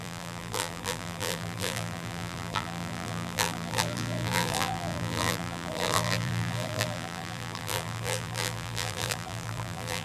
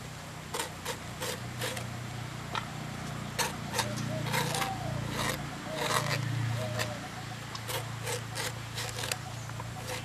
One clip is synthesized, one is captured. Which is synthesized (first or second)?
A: first